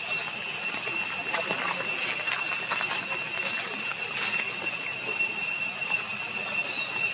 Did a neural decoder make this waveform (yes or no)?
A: no